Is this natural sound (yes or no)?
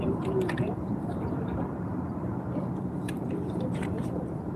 no